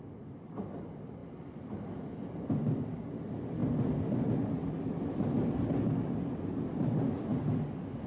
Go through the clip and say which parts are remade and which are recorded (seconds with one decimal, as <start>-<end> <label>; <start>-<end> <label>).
0.0-8.1 recorded